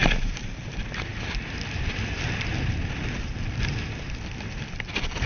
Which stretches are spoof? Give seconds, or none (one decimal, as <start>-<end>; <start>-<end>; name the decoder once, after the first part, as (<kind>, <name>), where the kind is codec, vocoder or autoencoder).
0.0-0.5 (vocoder, BigVGAN v2)